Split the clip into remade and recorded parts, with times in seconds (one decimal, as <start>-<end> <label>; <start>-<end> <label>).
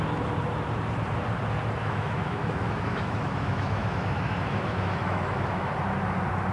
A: 0.0-1.8 recorded; 1.8-5.7 remade; 5.7-6.5 recorded